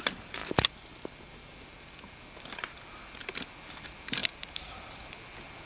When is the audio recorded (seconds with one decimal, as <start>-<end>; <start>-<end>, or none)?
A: 0.0-5.7